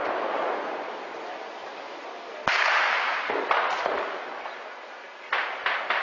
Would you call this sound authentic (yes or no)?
yes